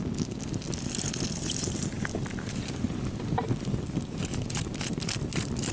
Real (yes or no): yes